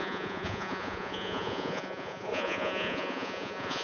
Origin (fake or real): fake